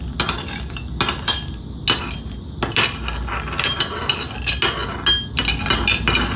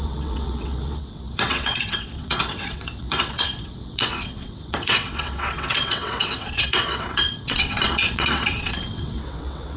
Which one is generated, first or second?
second